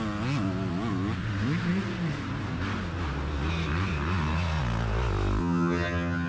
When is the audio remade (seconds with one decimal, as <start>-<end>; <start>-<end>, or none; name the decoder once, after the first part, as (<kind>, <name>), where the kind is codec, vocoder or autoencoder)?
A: 5.4-6.3 (vocoder, HiFi-GAN)